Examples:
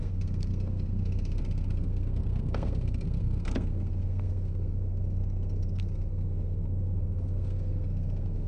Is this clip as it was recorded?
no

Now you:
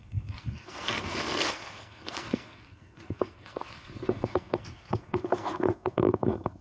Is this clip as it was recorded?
no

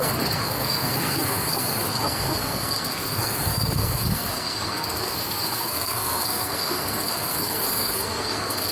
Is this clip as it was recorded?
no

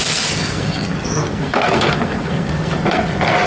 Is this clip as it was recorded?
no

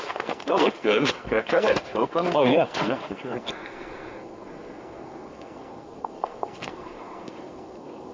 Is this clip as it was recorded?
no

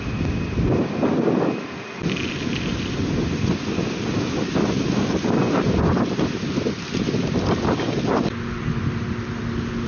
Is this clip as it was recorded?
yes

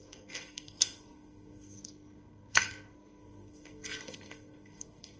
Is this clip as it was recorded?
no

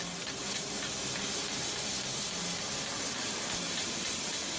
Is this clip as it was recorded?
yes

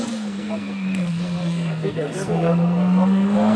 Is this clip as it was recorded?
no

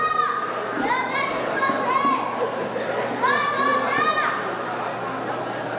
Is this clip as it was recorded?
yes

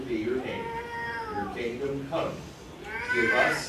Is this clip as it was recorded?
yes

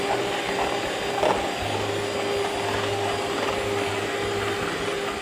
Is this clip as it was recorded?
yes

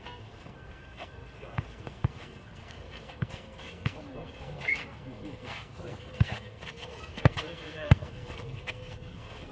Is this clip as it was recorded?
no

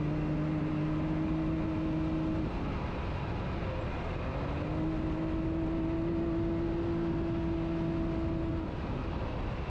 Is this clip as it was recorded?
yes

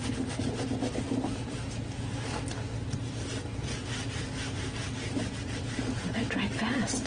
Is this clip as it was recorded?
yes